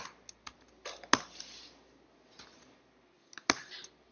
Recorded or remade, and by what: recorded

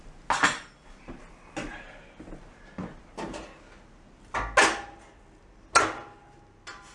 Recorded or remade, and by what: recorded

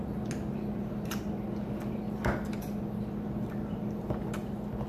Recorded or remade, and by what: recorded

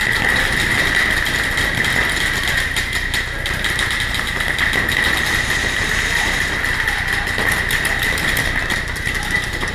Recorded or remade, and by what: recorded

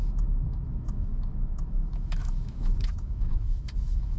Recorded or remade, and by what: remade, autoencoder, DAC-VAE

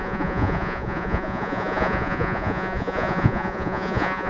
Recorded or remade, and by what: remade, vocoder, Vocos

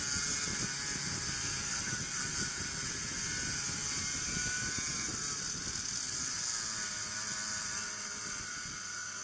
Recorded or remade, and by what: recorded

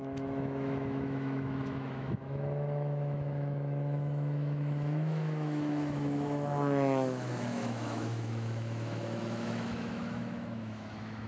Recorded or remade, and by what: remade, autoencoder, DAC-VAE